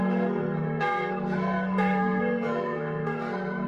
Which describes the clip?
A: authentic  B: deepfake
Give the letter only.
B